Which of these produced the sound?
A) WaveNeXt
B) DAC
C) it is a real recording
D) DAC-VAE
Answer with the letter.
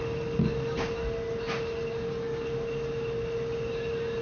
C